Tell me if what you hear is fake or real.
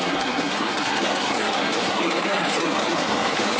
fake